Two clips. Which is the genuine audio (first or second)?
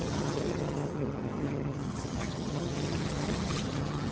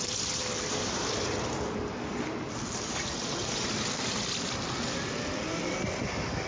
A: second